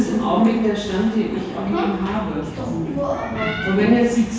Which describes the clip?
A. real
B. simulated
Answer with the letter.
A